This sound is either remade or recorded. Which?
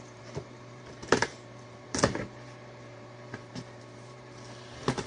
remade